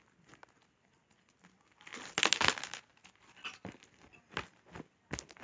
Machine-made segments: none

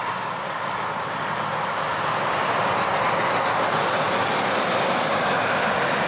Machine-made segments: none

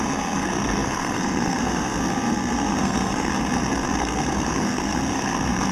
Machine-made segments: 0.0-3.3 (codec, SNAC); 4.0-5.7

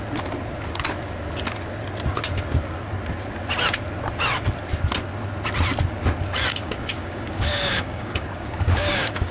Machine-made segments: 6.6-9.3 (codec, DAC)

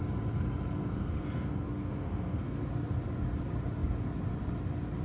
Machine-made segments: 0.8-2.6 (codec, SNAC)

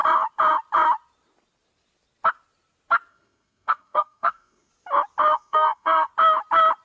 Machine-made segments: 3.1-4.7 (codec, SNAC); 5.3-6.1